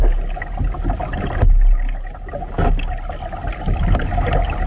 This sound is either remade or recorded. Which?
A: recorded